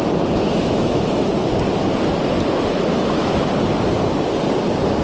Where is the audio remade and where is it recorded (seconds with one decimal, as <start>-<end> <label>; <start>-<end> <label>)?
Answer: 0.0-0.6 recorded; 0.6-1.3 remade; 1.3-2.7 recorded; 2.7-3.5 remade; 3.5-5.0 recorded